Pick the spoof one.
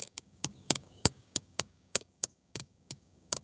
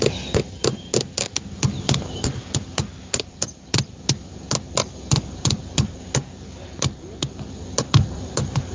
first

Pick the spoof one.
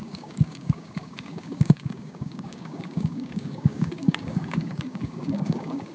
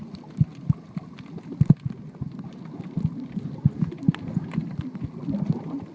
first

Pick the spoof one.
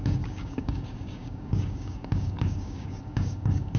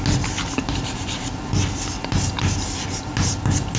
first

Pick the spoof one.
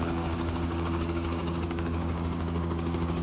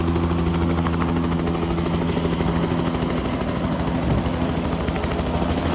first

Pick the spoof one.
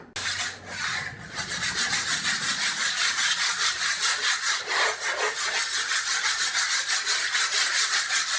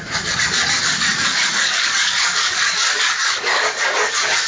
second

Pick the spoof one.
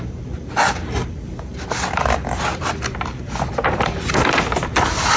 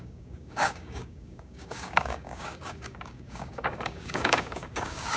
second